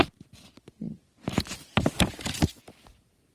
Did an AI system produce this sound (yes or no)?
no